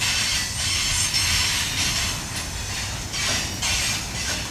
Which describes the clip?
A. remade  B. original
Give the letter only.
B